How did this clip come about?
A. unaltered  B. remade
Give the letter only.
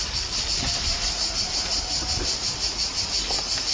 A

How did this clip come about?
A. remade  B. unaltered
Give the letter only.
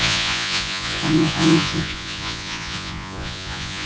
A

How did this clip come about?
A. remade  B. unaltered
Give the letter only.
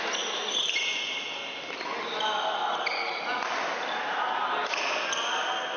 B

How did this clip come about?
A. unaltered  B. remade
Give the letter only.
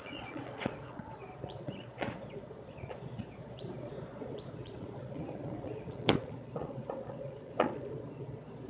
B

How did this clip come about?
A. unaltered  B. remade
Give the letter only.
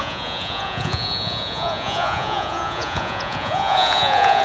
B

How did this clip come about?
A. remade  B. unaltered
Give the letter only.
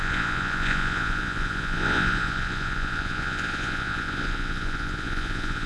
A